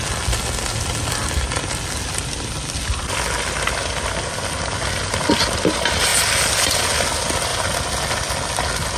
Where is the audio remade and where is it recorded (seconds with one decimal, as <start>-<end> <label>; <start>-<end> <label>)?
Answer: 0.0-9.0 recorded